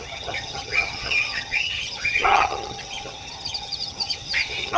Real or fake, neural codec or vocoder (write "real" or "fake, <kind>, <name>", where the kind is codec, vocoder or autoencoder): fake, vocoder, HiFi-GAN